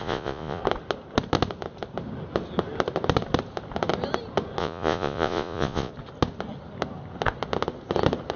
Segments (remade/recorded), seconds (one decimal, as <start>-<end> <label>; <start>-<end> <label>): 0.0-0.6 remade; 0.6-4.6 recorded; 4.6-5.9 remade; 5.9-8.4 recorded